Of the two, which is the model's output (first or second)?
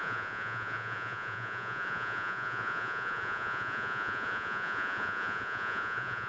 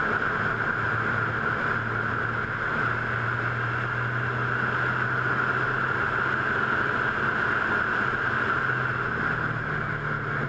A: first